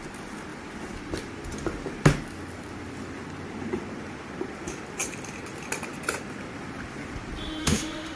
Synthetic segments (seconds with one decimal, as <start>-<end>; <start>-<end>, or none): 7.6-8.2